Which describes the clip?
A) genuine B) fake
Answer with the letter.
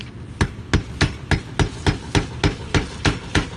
A